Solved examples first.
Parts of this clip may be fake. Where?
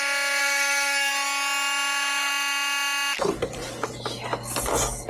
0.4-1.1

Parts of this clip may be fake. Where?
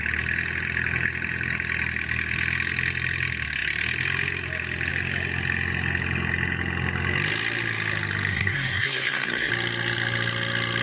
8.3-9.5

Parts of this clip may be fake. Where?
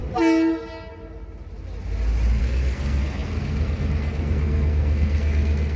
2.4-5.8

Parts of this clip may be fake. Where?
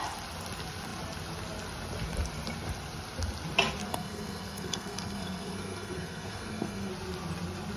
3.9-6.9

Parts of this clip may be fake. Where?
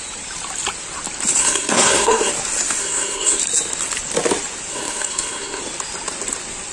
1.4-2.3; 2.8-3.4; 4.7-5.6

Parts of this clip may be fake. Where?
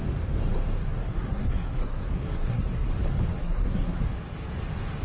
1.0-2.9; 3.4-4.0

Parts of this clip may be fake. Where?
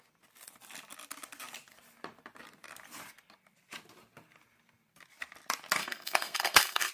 5.8-6.9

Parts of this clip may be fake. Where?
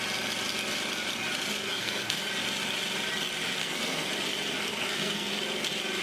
1.7-2.3; 3.6-4.1; 4.6-5.3